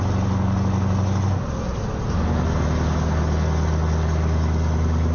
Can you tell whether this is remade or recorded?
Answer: recorded